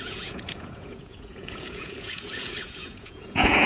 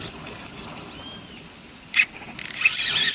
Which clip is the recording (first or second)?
second